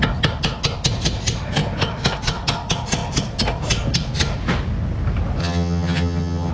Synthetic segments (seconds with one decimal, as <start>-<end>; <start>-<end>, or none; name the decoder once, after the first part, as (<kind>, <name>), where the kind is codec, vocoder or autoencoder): 5.4-6.5 (vocoder, HiFi-GAN)